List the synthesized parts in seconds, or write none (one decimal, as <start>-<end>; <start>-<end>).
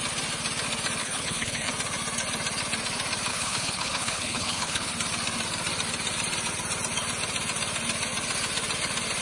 1.0-1.7; 3.3-4.9